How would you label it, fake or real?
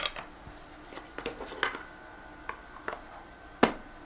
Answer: real